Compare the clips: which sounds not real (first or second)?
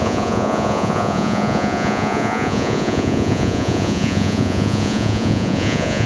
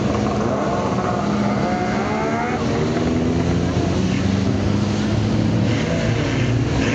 first